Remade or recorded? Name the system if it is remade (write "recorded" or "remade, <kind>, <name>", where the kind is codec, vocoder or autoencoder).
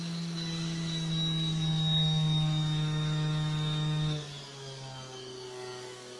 remade, codec, DAC